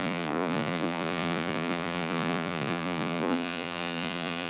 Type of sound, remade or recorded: remade